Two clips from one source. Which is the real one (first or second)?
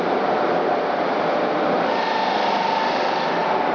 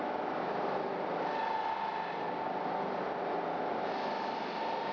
second